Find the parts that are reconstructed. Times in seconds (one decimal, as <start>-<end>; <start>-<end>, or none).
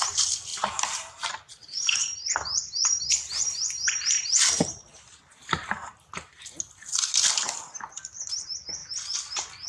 0.5-1.3; 2.0-6.1